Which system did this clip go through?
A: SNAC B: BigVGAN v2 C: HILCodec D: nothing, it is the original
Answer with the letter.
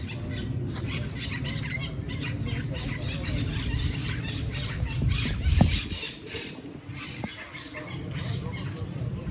D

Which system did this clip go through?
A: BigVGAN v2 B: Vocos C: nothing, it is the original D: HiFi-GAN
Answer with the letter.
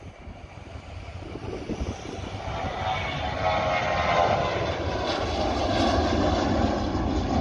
C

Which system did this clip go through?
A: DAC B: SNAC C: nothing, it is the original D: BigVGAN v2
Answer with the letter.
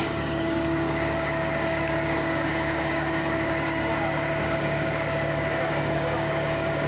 A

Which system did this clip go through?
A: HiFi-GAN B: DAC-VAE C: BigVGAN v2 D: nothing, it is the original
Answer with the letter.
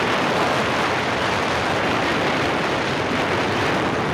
D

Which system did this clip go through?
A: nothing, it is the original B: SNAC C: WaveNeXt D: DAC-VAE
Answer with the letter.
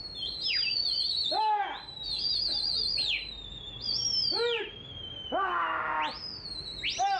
A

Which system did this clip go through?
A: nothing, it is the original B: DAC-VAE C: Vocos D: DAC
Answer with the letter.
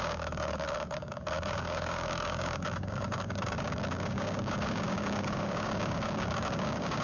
D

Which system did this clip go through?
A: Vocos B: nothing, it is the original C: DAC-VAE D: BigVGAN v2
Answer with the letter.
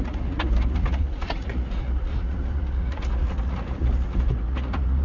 A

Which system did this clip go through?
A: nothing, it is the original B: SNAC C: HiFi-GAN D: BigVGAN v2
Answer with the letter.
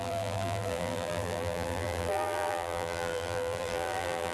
D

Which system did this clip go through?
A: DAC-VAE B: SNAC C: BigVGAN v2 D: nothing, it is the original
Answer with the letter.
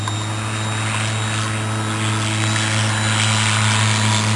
D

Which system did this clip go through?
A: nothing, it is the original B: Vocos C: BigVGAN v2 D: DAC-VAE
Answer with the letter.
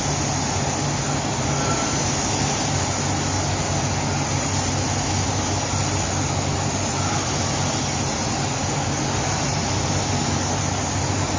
A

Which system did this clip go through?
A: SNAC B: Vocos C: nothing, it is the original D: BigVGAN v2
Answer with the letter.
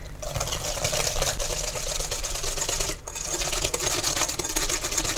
D